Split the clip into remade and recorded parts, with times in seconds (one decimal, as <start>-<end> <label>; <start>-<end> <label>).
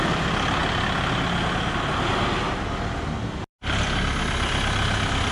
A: 0.0-0.6 remade; 0.6-3.8 recorded; 3.8-5.3 remade